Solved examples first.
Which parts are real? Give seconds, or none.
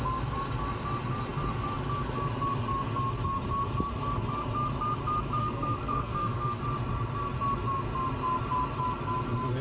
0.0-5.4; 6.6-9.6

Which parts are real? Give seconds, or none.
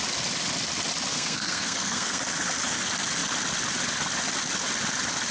0.0-1.1; 2.2-5.3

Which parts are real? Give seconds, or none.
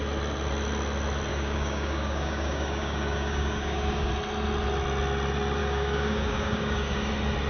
0.0-1.3; 4.1-5.6; 7.1-7.5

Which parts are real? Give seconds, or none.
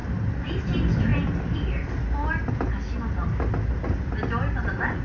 0.0-5.0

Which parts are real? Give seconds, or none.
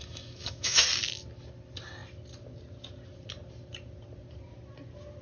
0.8-5.2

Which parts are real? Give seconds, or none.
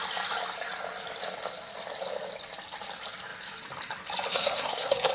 0.0-4.3